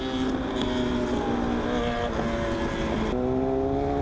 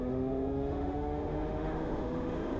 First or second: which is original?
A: first